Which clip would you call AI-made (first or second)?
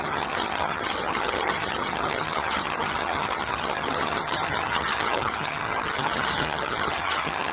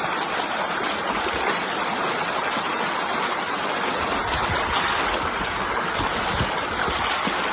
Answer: first